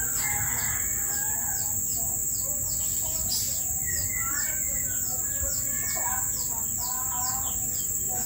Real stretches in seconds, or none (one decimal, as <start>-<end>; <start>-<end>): 0.0-8.3